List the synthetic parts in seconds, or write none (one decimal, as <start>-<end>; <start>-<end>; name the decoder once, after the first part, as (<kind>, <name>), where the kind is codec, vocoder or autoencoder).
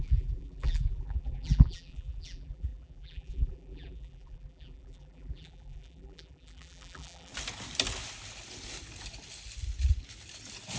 0.0-7.3 (vocoder, BigVGAN v2)